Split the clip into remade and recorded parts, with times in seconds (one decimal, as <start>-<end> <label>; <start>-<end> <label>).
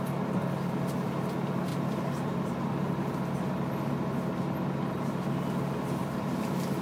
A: 0.0-1.7 recorded; 1.7-5.3 remade; 5.3-6.0 recorded; 6.0-6.8 remade